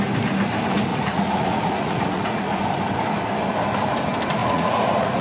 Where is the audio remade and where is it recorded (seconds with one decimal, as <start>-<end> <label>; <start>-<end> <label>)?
0.0-0.9 recorded; 0.9-2.6 remade; 2.6-4.4 recorded; 4.4-5.2 remade